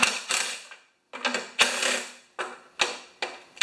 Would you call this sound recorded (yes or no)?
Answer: yes